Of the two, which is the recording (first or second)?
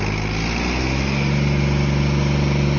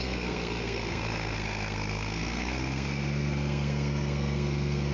first